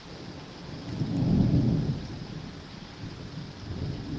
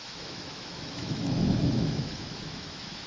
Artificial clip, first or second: second